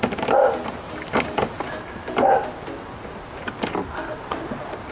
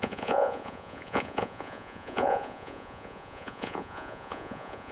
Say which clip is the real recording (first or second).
first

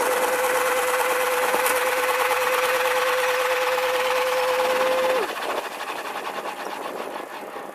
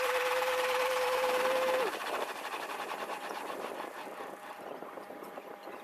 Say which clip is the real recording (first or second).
first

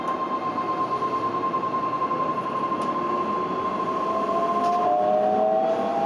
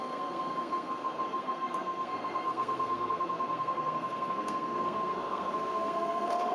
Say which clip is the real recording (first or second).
first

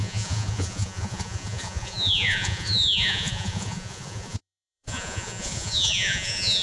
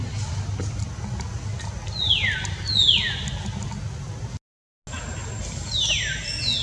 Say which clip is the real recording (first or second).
second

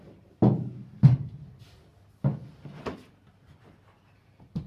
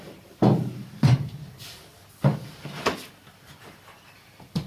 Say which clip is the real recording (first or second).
first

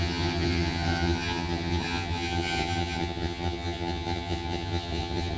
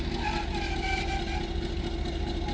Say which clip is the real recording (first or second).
second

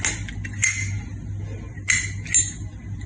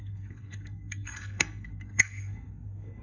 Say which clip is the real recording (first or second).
first